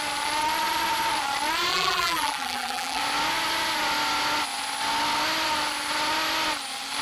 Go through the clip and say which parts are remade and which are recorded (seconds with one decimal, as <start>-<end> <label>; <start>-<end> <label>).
0.0-1.7 recorded; 1.7-3.0 remade; 3.0-7.0 recorded